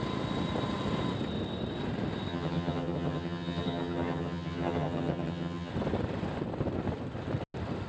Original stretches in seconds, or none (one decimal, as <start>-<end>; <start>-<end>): 0.0-2.3; 5.7-7.9